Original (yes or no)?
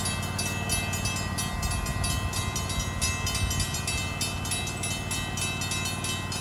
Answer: yes